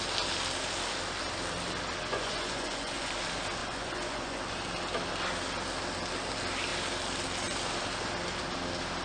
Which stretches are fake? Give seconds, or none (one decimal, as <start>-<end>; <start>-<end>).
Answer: 2.1-3.1; 3.6-4.4